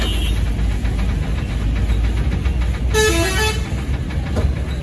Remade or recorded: recorded